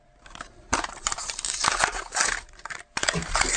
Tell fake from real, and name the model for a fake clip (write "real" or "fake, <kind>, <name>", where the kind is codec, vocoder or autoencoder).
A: fake, vocoder, BigVGAN v2